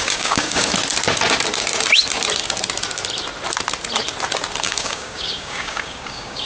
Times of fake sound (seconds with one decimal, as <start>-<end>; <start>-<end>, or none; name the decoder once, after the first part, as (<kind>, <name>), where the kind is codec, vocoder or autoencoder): 0.0-0.7 (codec, DAC); 4.6-6.5